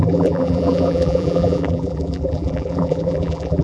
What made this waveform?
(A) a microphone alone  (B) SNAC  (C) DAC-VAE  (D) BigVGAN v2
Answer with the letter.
D